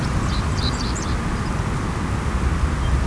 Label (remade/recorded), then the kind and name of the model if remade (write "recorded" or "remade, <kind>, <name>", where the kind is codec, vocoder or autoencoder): recorded